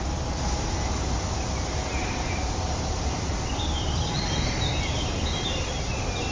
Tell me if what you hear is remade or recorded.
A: recorded